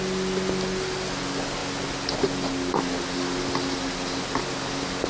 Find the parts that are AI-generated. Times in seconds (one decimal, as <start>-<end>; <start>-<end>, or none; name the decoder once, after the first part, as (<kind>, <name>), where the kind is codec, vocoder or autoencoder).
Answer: none

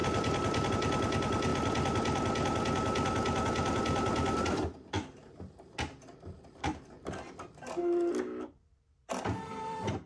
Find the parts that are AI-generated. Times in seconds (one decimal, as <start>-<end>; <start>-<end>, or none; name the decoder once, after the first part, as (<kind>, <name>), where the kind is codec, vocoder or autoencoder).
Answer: 0.7-1.5 (vocoder, BigVGAN v2); 6.8-10.1

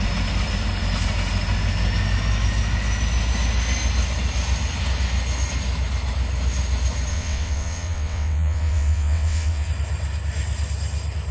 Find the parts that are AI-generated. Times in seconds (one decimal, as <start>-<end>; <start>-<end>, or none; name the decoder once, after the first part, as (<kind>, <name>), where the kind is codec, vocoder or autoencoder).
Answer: 7.1-9.7 (vocoder, WaveNeXt)

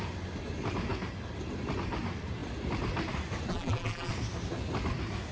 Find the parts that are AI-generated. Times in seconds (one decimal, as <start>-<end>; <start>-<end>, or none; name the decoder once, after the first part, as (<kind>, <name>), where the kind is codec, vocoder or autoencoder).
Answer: 3.5-4.1 (vocoder, BigVGAN v2)

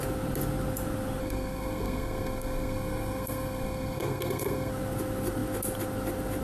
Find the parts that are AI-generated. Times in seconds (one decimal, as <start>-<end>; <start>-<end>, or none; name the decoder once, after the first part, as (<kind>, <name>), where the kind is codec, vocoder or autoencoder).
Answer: 1.2-4.7 (codec, SNAC)

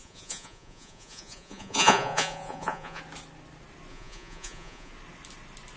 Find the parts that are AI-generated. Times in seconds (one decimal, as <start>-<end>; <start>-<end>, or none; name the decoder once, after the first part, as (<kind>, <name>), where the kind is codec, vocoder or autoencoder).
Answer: 0.0-3.0 (vocoder, Vocos); 3.9-4.9

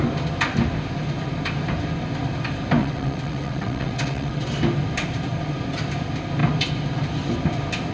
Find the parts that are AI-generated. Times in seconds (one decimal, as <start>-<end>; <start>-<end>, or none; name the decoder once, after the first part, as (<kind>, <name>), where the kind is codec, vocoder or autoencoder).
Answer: 2.8-4.5 (vocoder, WaveNeXt)